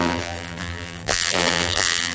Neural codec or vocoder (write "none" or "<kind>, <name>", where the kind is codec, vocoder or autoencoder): vocoder, BigVGAN v2